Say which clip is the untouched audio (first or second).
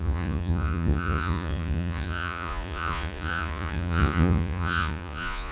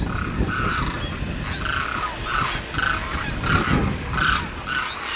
second